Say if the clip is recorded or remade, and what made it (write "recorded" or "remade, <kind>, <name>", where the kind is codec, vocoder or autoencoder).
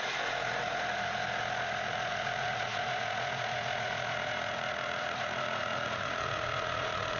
remade, vocoder, Vocos